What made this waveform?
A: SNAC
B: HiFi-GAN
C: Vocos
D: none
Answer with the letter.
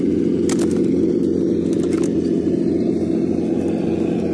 D